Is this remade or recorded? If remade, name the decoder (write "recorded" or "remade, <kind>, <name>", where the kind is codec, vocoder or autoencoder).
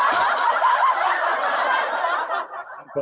recorded